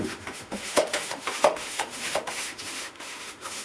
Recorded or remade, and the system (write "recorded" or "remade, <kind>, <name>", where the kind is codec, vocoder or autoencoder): remade, autoencoder, DAC-VAE